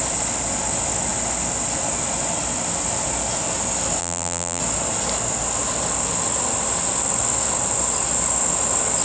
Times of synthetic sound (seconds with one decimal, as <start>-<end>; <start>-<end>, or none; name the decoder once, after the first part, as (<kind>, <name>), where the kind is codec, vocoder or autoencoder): 4.0-4.6 (vocoder, BigVGAN v2)